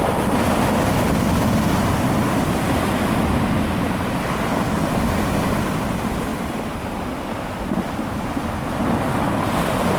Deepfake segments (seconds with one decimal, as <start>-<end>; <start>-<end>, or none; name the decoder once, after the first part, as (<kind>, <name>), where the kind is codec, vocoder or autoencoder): none